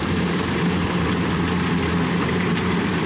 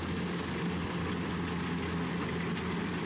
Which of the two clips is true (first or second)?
second